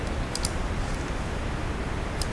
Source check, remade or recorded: recorded